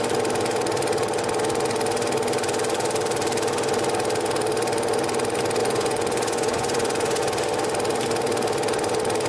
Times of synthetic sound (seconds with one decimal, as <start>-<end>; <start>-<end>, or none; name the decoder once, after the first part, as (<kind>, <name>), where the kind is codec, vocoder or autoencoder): 5.6-7.2 (vocoder, Vocos)